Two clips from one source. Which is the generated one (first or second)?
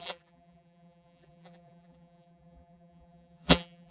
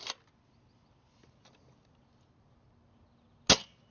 first